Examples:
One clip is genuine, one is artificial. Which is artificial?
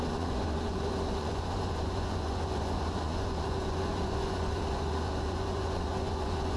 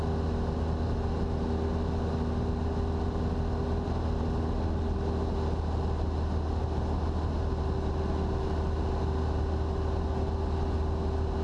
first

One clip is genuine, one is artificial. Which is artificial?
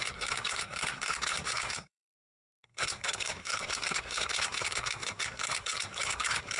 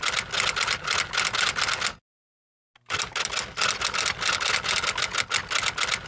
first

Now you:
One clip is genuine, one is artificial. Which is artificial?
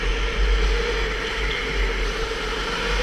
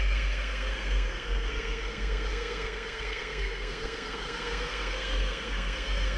second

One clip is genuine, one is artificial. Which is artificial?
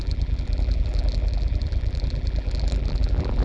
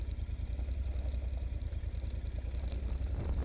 first